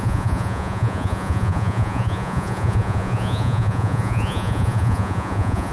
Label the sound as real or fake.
fake